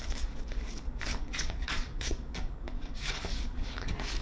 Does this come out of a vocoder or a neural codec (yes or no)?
yes